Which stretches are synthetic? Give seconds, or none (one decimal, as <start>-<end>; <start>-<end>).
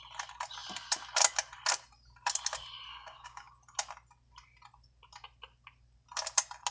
2.9-3.5